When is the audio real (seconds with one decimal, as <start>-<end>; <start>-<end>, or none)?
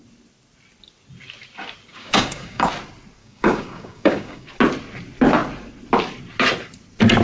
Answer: 0.0-1.9; 2.7-3.2; 4.5-7.2